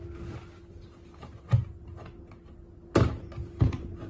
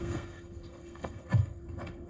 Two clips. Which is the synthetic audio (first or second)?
second